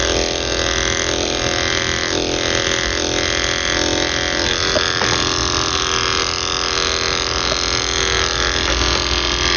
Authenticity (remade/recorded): recorded